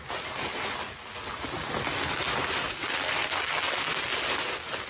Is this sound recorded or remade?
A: recorded